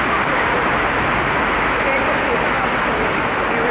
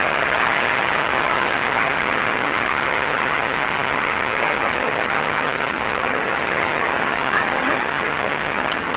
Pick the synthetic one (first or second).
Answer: second